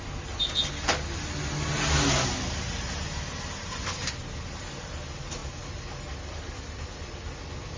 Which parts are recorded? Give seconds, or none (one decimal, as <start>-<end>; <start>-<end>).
0.0-7.8

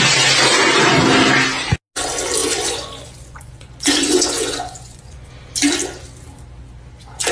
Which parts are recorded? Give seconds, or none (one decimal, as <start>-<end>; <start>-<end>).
0.0-2.4; 5.3-7.3

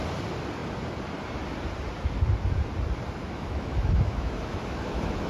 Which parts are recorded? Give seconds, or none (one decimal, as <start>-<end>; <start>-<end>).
0.0-3.2

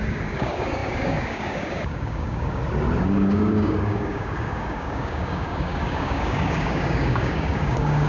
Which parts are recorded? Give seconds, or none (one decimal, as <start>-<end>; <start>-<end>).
2.6-3.1